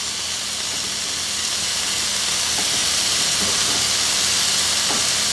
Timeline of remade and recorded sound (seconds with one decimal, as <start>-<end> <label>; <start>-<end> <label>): 0.0-5.3 recorded